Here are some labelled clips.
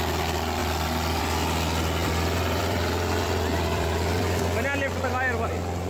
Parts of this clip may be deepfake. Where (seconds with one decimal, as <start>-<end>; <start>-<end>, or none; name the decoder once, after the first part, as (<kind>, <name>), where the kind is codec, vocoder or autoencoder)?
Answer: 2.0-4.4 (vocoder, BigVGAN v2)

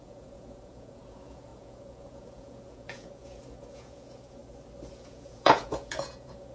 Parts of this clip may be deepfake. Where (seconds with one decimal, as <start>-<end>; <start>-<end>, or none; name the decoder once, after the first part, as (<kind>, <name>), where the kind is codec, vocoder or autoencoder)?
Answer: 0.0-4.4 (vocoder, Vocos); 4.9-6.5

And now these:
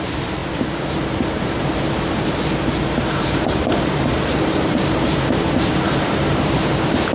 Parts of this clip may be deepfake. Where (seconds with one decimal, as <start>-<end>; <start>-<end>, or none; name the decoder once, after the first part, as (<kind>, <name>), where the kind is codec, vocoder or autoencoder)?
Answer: 0.0-7.1 (vocoder, BigVGAN v2)